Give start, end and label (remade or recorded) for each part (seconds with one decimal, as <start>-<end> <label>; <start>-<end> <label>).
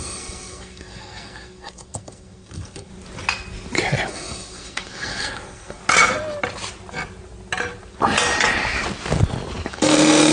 0.0-2.9 remade; 2.9-4.1 recorded; 4.1-5.8 remade; 5.8-9.7 recorded; 9.7-10.3 remade